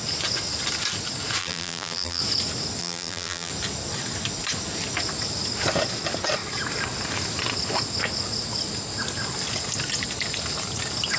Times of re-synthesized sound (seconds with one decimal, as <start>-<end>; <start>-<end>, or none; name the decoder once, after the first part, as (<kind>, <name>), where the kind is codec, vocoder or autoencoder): 1.4-2.2 (vocoder, BigVGAN v2); 2.8-3.5